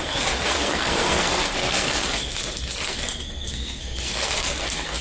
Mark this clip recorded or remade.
remade